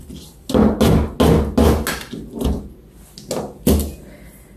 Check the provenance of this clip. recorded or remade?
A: recorded